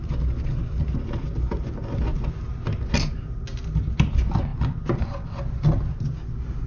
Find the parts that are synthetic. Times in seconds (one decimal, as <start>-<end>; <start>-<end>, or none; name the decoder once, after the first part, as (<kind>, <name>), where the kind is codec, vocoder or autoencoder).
none